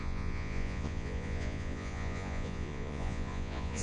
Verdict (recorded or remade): remade